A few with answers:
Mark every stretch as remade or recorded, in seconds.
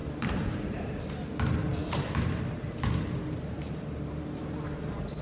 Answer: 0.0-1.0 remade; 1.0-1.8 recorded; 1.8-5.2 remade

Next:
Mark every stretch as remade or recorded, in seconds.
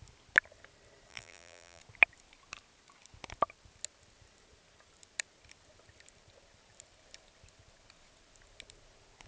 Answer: 0.0-1.1 recorded; 1.1-1.8 remade; 1.8-9.3 recorded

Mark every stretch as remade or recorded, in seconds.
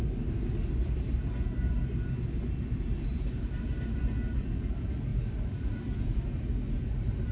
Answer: 0.0-3.1 recorded; 3.1-4.0 remade; 4.0-7.3 recorded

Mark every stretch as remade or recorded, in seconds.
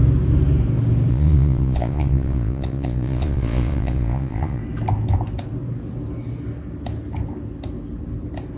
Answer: 0.0-1.1 recorded; 1.1-4.6 remade; 4.6-8.6 recorded